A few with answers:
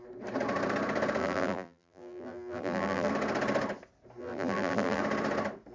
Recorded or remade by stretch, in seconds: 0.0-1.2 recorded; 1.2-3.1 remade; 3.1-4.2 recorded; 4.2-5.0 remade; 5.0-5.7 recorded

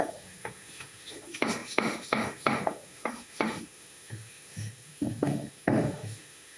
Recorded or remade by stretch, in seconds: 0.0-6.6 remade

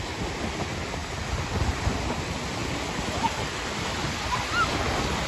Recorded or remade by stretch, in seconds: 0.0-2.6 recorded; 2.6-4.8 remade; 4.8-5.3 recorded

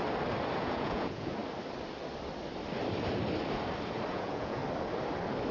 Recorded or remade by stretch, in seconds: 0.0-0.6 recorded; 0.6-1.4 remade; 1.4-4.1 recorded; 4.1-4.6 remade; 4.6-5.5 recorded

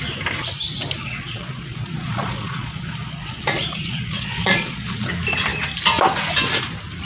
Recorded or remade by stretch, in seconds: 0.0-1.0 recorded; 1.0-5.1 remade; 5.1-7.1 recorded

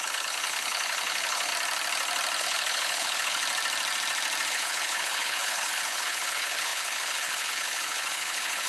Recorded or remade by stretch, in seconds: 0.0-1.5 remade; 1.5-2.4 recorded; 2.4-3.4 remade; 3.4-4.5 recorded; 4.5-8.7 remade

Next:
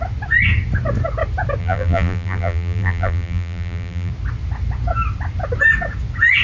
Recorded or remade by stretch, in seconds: 0.0-1.6 recorded; 1.6-4.1 remade; 4.1-6.4 recorded